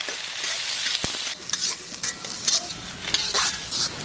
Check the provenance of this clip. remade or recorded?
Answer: recorded